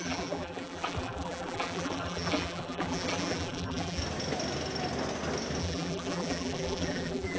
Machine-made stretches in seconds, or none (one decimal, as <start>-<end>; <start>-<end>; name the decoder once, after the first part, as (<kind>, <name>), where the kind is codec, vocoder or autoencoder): 0.0-4.0 (vocoder, BigVGAN v2); 5.6-7.4